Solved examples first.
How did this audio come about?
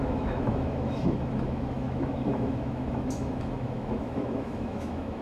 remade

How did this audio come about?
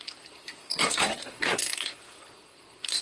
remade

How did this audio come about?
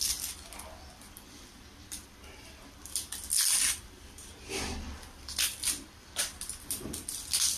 recorded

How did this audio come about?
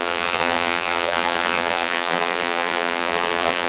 remade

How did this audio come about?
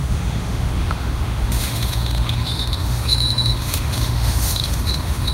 remade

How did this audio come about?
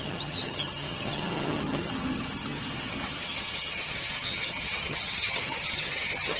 remade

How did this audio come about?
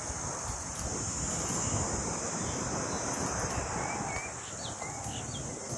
recorded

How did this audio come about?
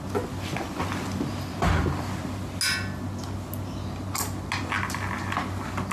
recorded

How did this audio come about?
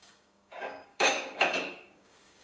remade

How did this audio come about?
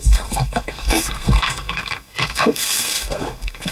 remade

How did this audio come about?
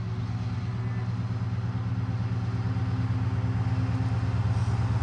recorded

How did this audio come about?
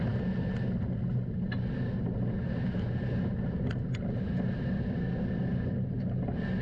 recorded